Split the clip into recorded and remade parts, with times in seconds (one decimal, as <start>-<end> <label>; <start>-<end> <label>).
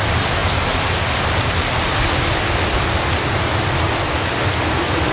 0.0-5.1 recorded